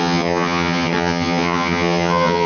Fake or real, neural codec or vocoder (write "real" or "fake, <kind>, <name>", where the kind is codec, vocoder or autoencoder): fake, vocoder, HiFi-GAN